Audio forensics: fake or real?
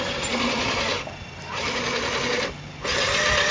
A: real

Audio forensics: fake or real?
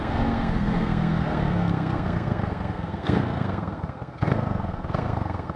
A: fake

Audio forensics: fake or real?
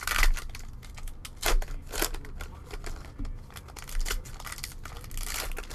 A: real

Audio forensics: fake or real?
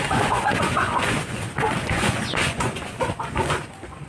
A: fake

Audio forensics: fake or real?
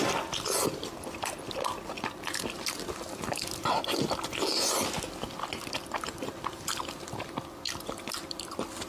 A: real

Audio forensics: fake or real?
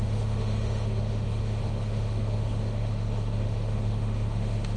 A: fake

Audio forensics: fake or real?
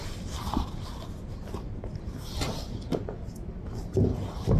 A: real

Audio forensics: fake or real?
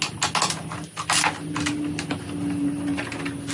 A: real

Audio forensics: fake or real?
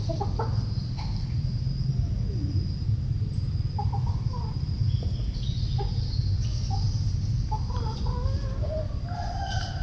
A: real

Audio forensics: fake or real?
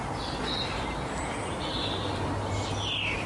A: real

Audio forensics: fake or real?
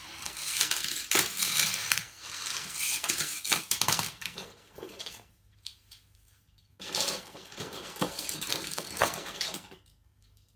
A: fake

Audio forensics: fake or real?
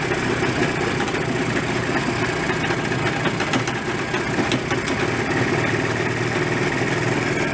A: real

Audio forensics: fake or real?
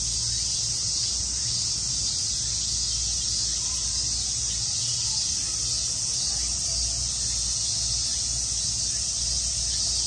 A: real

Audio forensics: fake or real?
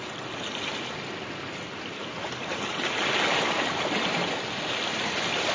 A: real